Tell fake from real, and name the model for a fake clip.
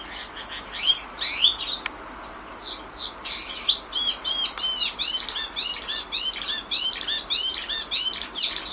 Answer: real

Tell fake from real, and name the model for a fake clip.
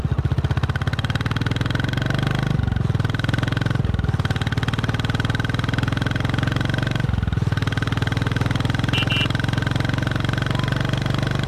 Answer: real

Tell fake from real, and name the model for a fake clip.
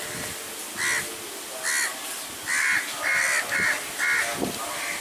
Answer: real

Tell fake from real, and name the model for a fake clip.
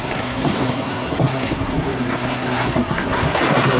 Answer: fake, codec, SNAC